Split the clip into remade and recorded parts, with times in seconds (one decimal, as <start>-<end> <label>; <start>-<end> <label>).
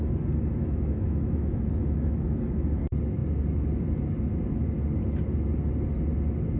0.0-0.6 recorded; 0.6-2.5 remade; 2.5-6.6 recorded